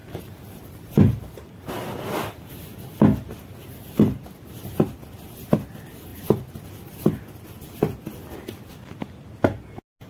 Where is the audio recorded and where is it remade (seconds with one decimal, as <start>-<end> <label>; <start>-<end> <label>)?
0.0-1.7 remade; 1.7-10.1 recorded

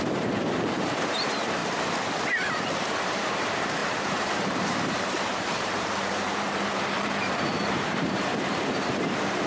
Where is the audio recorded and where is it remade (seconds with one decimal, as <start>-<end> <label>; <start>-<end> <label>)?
0.0-1.6 remade; 1.6-2.8 recorded; 2.8-9.5 remade

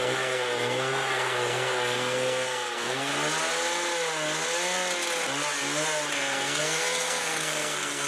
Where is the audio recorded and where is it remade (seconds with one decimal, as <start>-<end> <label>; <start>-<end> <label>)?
0.0-3.1 remade; 3.1-6.1 recorded; 6.1-8.1 remade

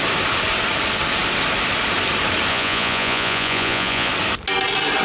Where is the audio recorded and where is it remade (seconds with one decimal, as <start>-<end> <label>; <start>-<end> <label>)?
0.0-2.5 recorded; 2.5-4.1 remade; 4.1-5.0 recorded

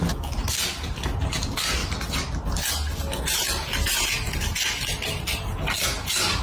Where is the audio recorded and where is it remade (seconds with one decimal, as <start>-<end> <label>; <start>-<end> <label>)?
0.0-6.4 recorded

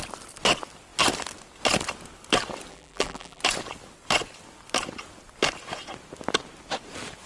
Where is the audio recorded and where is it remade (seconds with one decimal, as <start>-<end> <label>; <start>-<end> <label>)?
0.0-2.7 recorded; 2.7-3.4 remade; 3.4-7.3 recorded